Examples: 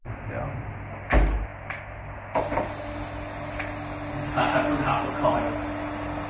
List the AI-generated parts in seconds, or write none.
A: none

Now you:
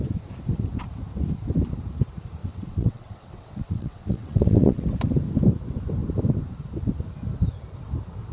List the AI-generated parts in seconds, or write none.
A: 2.4-4.8 (vocoder, WaveNeXt)

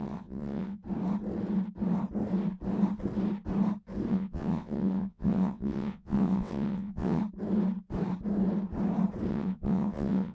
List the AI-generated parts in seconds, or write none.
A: 0.0-0.8 (vocoder, WaveNeXt); 4.1-7.2; 9.3-10.3

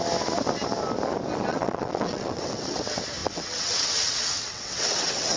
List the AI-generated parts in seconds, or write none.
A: 1.5-2.8 (vocoder, WaveNeXt); 3.2-5.4

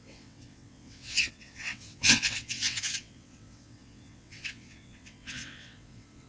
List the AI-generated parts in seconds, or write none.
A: 0.0-6.3 (vocoder, WaveNeXt)

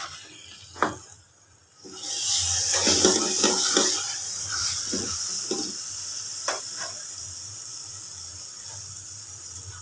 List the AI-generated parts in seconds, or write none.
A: 4.6-5.2 (vocoder, WaveNeXt)